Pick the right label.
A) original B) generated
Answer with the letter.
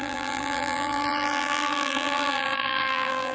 B